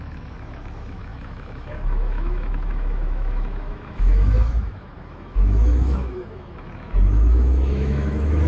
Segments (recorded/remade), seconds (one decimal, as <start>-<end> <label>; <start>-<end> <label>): 0.0-8.5 remade